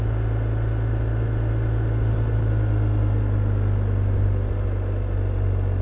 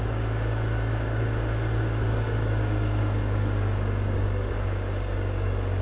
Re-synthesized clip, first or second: second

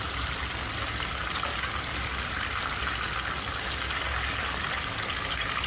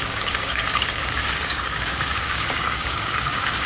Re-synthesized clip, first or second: second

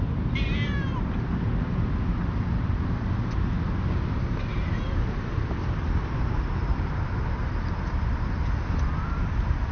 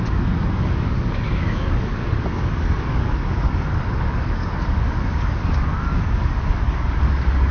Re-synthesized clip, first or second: second